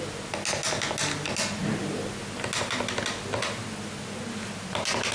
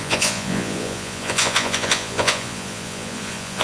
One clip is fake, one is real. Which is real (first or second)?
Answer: first